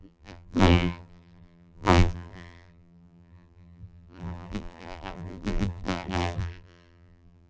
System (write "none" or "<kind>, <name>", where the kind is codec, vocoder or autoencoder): vocoder, BigVGAN v2